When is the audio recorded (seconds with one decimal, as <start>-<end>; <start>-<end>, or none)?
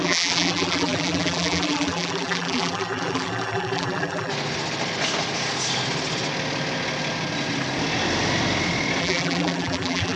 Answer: 4.3-9.0